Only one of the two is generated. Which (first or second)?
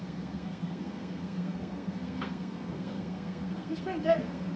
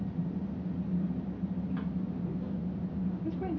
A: first